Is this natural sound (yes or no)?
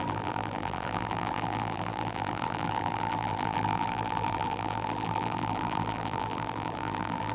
no